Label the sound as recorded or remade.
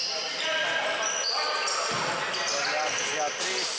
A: recorded